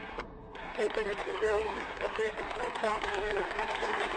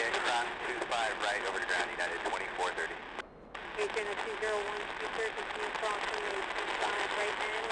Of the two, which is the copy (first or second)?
first